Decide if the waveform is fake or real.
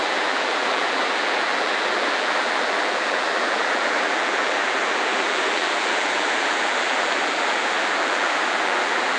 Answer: fake